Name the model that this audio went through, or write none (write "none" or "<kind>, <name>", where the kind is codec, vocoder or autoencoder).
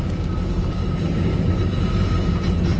none